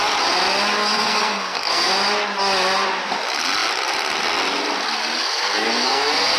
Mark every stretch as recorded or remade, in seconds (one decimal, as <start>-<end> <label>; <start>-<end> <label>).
0.0-0.8 recorded; 0.8-1.9 remade; 1.9-5.2 recorded; 5.2-6.4 remade